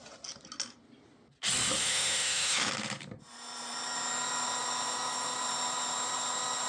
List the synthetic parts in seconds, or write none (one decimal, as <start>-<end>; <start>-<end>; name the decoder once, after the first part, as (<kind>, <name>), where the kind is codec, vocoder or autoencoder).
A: 1.8-2.7 (autoencoder, DAC-VAE)